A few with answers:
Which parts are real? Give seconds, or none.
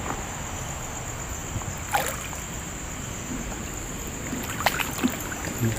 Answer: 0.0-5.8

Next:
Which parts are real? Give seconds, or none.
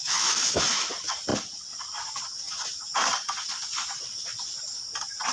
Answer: 0.9-5.3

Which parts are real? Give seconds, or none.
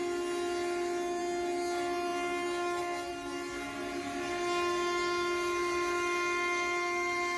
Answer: 0.0-7.4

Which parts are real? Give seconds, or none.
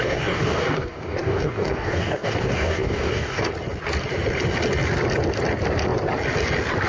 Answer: 3.5-6.9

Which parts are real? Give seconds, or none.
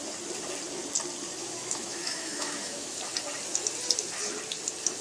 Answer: 0.0-1.4; 3.1-5.0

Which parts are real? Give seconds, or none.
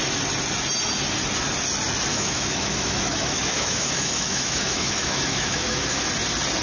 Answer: 0.0-2.1; 6.1-6.6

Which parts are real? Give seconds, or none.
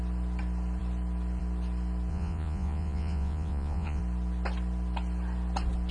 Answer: 0.0-2.1; 4.0-5.9